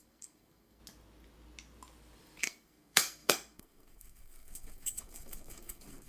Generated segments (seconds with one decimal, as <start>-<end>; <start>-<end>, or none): 0.0-0.8; 2.4-6.1